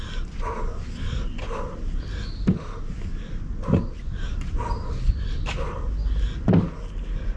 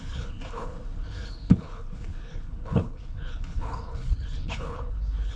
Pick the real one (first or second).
first